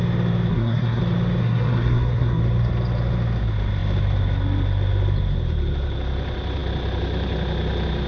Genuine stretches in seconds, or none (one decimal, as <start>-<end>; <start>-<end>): 0.0-0.5; 1.0-1.4; 2.4-8.1